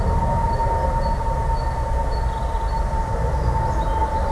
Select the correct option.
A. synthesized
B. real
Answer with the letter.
B